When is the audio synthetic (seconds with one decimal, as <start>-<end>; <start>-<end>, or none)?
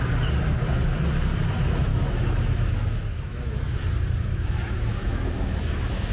1.9-3.8; 4.3-6.1